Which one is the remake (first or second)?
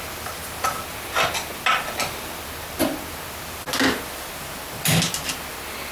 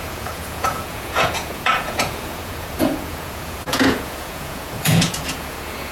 second